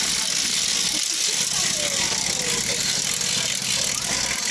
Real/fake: real